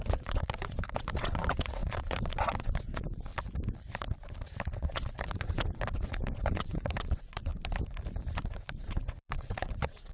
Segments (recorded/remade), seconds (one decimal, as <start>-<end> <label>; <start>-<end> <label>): 0.0-3.3 remade; 3.3-4.8 recorded; 4.8-7.5 remade; 7.5-8.4 recorded; 8.4-10.1 remade